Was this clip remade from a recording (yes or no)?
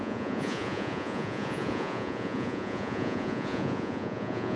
yes